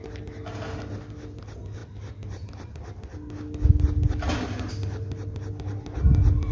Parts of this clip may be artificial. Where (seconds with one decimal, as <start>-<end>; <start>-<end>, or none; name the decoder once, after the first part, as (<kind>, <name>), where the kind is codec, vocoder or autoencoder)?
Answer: none